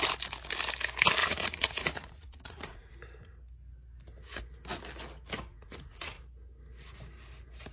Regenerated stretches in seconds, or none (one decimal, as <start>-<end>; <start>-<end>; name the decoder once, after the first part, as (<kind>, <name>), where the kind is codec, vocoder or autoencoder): 1.2-2.9 (vocoder, Vocos); 5.5-6.2